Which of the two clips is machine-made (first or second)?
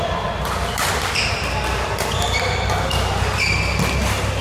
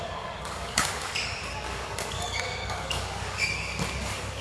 second